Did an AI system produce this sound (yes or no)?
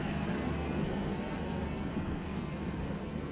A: yes